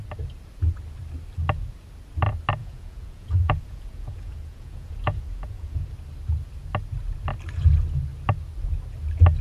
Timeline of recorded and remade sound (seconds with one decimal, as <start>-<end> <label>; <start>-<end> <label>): 0.0-2.6 recorded; 2.6-5.9 remade; 5.9-9.4 recorded